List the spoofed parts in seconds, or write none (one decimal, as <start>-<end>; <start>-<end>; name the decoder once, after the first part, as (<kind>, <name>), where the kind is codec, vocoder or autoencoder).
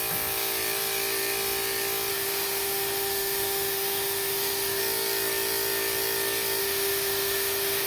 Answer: 2.1-4.8 (autoencoder, DAC-VAE); 6.6-7.9